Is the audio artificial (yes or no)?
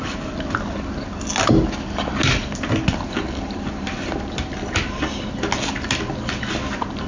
no